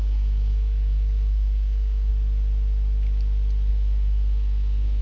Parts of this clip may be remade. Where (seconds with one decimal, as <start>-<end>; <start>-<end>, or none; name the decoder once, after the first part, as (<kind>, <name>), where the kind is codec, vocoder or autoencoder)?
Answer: 0.0-2.1 (codec, SNAC); 3.7-5.0